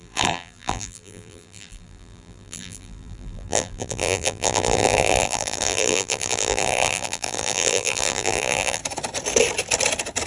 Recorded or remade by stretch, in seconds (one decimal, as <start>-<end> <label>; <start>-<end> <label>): 0.0-8.8 remade; 8.8-10.3 recorded